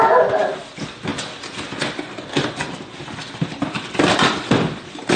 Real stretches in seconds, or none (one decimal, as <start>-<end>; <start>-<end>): 0.0-5.2